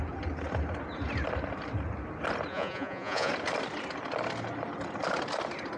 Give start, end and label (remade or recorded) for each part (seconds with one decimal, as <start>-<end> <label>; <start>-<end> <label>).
0.0-2.5 recorded; 2.5-3.3 remade; 3.3-5.8 recorded